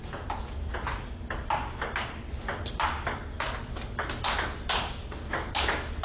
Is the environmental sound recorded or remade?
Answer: recorded